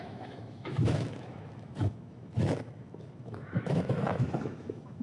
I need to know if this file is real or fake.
fake